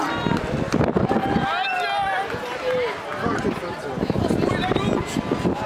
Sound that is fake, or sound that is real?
real